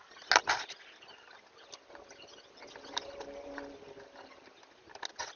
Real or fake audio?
real